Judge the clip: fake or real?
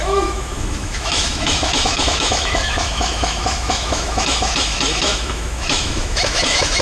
fake